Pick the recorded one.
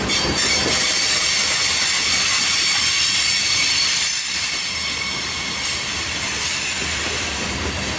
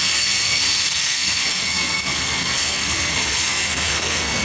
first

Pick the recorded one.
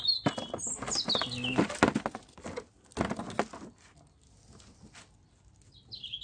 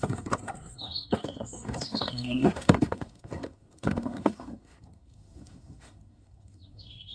first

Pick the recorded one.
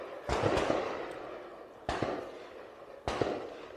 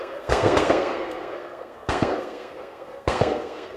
first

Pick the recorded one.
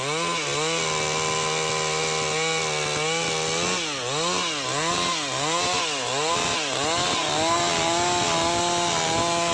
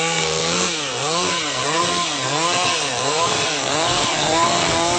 first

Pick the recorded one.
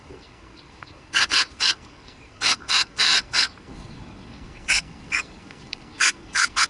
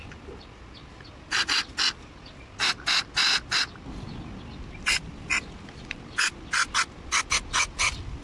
second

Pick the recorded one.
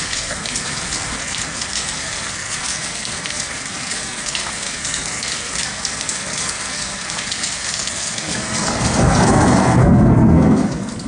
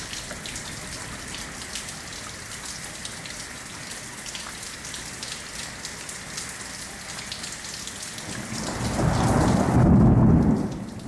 second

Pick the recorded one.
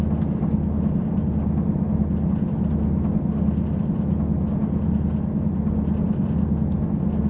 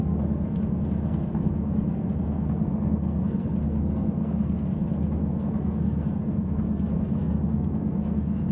first